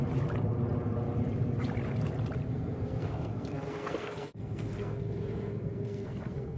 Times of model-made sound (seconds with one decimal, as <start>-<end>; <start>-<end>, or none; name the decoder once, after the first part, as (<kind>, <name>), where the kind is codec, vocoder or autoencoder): 2.5-6.6 (codec, SNAC)